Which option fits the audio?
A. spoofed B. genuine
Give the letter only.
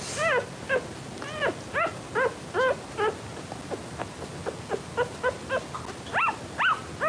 B